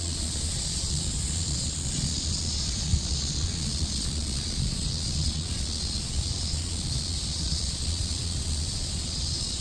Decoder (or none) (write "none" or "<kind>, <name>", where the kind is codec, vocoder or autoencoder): vocoder, Vocos